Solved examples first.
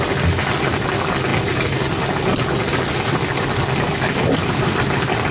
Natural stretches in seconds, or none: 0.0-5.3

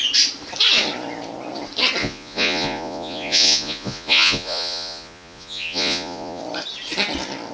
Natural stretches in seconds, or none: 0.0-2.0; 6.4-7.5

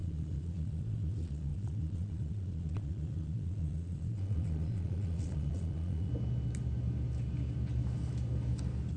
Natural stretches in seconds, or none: 6.1-9.0

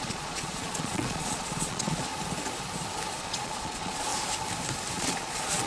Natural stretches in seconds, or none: 2.1-3.2; 4.1-4.9

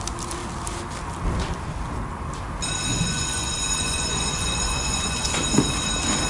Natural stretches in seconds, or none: 0.0-2.9; 5.4-6.3